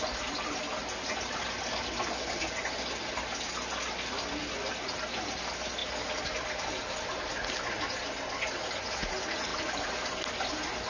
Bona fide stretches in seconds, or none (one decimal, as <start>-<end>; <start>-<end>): 0.0-10.9